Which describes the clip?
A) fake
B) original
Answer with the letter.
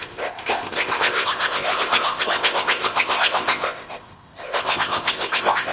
A